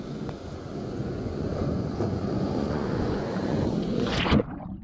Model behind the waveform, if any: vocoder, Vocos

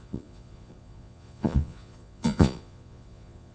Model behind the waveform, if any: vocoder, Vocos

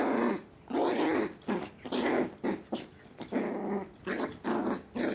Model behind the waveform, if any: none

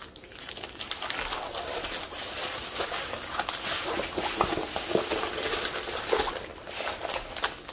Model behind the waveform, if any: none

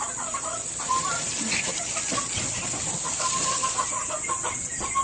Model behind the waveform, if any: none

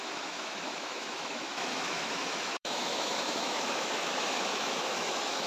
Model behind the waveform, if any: autoencoder, DAC-VAE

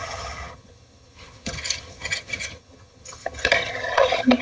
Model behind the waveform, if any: vocoder, HiFi-GAN